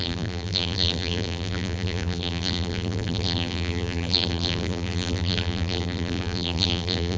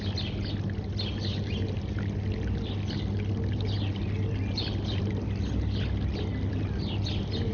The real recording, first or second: second